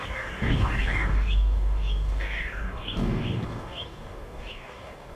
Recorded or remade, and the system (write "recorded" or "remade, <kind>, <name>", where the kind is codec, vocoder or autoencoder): remade, codec, DAC